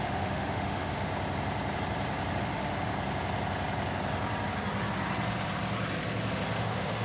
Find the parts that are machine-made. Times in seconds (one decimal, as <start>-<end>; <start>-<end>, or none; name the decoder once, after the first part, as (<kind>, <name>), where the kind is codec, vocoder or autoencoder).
0.0-1.1 (autoencoder, DAC-VAE); 2.4-2.9; 6.6-7.0